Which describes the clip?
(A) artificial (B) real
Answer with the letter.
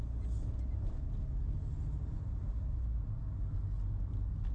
B